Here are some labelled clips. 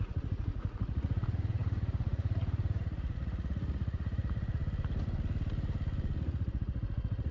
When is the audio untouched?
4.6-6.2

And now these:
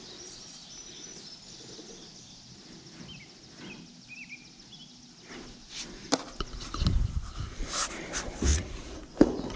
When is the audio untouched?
0.0-8.5

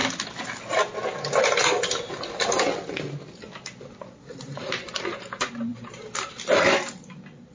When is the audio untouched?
0.0-7.5

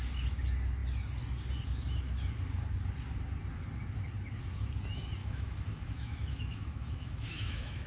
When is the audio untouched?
0.0-5.2